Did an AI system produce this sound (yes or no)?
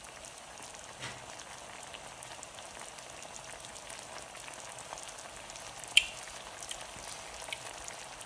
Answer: no